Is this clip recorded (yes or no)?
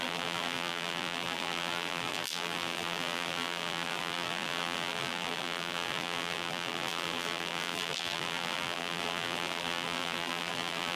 no